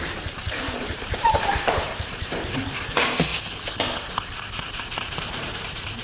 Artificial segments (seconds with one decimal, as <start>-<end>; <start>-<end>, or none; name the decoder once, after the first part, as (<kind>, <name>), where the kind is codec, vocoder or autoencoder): 0.0-3.3 (vocoder, BigVGAN v2); 4.8-6.0